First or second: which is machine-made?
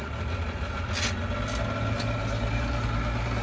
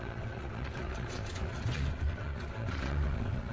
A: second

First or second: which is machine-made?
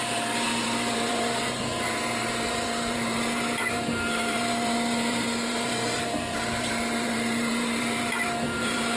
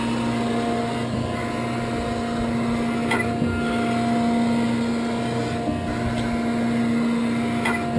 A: first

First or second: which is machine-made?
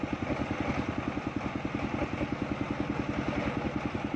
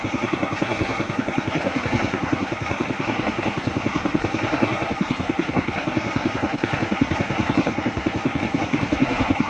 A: second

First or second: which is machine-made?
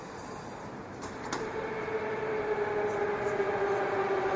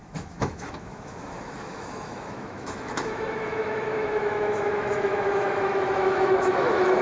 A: second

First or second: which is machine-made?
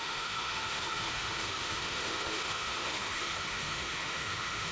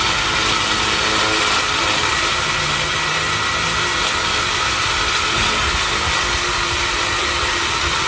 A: first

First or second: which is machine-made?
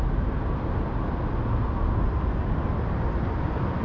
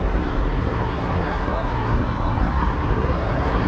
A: second